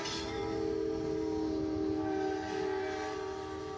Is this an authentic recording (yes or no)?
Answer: yes